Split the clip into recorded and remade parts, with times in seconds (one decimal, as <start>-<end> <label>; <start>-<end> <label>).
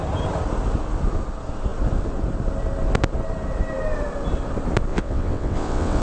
0.0-4.9 recorded; 4.9-6.0 remade